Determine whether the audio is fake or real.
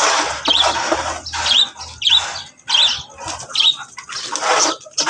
real